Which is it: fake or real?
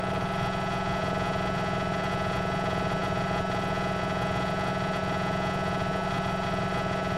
fake